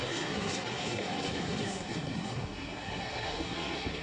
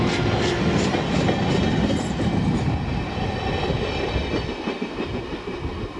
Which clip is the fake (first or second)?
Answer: first